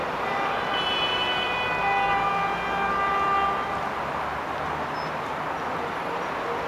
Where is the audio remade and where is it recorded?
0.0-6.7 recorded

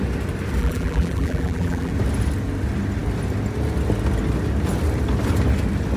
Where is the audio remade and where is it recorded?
0.0-0.6 recorded; 0.6-1.9 remade; 1.9-6.0 recorded

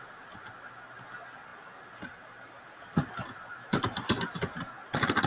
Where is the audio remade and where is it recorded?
0.0-1.5 recorded; 1.5-3.1 remade; 3.1-3.5 recorded; 3.5-4.1 remade; 4.1-5.3 recorded